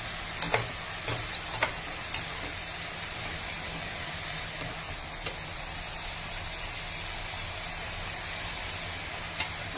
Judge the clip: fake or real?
real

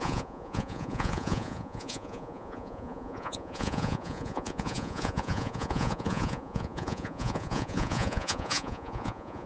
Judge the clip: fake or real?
fake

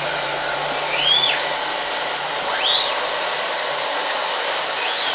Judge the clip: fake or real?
real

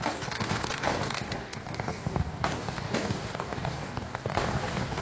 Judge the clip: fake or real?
fake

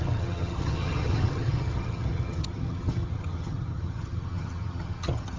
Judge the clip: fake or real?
fake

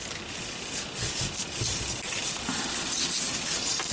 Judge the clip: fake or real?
real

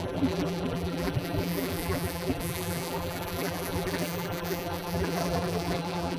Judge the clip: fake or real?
fake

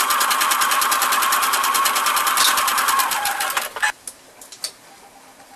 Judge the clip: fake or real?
real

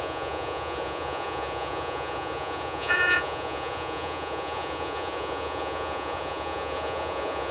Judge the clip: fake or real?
fake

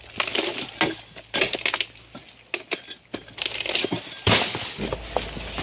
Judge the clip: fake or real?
real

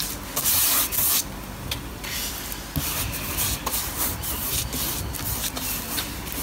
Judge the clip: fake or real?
real